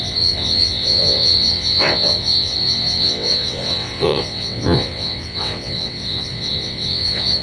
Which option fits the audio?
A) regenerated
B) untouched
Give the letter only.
A